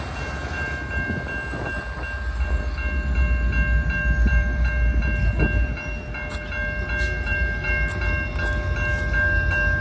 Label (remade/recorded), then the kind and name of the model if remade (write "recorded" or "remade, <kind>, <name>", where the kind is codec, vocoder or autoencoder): recorded